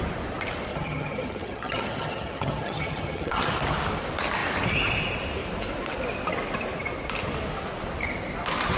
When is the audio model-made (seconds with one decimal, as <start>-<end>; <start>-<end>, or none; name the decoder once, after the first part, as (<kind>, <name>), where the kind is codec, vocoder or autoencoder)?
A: 0.7-3.5 (vocoder, HiFi-GAN)